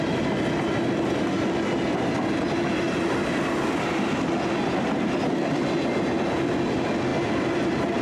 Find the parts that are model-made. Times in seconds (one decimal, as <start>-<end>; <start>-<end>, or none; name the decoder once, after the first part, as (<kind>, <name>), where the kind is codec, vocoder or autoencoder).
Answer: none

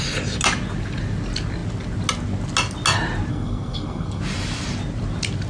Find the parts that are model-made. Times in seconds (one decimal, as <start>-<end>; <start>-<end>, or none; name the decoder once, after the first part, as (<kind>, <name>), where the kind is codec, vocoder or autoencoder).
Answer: 3.3-4.2 (codec, SNAC)

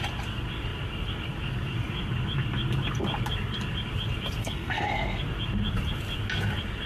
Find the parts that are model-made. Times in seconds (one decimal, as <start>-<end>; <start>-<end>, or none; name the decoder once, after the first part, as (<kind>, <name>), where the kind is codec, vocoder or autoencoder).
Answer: 4.4-5.2 (codec, SNAC)